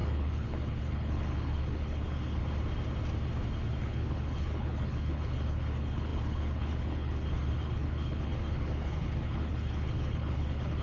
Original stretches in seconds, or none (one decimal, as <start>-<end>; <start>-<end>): 2.4-3.8